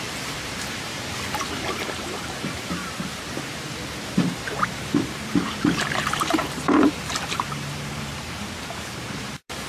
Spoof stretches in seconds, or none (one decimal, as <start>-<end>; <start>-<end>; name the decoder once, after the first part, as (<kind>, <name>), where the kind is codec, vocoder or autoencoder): 0.0-2.8 (vocoder, BigVGAN v2); 3.9-9.7